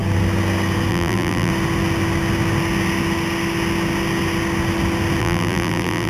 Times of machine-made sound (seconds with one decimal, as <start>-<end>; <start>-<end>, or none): 0.9-1.5; 5.2-6.1